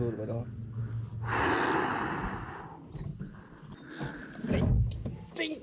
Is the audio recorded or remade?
recorded